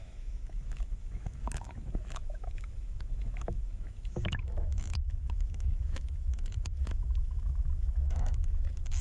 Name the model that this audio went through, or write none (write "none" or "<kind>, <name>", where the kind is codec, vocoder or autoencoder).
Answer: autoencoder, DAC-VAE